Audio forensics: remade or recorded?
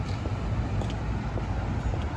recorded